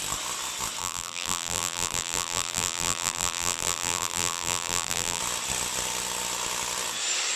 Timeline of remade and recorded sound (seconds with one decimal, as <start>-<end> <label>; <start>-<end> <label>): 0.0-0.8 recorded; 0.8-5.2 remade; 5.2-7.4 recorded

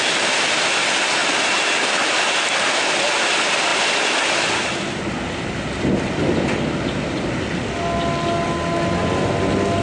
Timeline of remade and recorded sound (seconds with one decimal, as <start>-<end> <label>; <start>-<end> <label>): 0.0-9.8 recorded

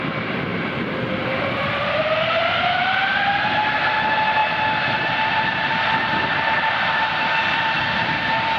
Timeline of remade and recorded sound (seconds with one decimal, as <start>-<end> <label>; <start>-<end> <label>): 0.0-0.5 recorded; 0.5-3.2 remade; 3.2-4.4 recorded; 4.4-8.1 remade; 8.1-8.6 recorded

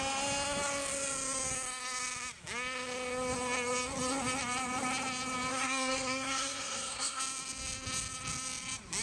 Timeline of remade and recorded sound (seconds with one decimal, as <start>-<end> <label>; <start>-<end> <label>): 0.0-5.5 recorded; 5.5-7.2 remade; 7.2-9.0 recorded

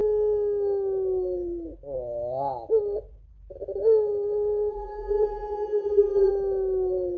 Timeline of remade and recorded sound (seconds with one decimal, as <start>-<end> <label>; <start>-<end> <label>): 0.0-4.7 recorded; 4.7-6.3 remade; 6.3-7.2 recorded

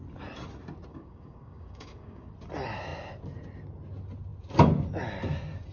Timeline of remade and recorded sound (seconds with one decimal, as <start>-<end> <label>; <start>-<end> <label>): 0.0-0.9 recorded; 0.9-2.3 remade; 2.3-5.7 recorded